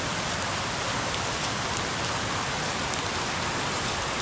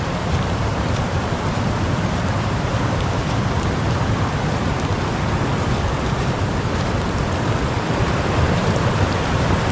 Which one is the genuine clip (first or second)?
first